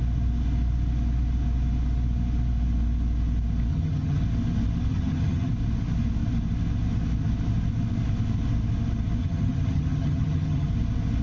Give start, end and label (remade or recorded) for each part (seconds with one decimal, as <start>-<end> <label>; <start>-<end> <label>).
0.0-3.7 recorded; 3.7-4.2 remade; 4.2-4.9 recorded; 4.9-5.5 remade; 5.5-9.2 recorded; 9.2-10.7 remade; 10.7-11.2 recorded